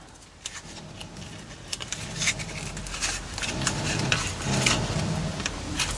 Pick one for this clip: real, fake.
real